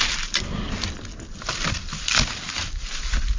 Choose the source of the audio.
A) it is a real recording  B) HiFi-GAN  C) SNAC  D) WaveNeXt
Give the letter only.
A